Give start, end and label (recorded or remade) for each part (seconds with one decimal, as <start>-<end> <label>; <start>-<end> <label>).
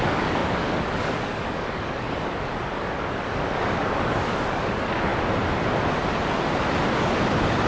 0.0-5.1 remade; 5.1-7.0 recorded; 7.0-7.7 remade